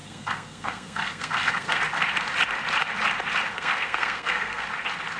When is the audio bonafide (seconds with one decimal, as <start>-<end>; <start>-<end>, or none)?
1.8-3.5; 4.7-5.2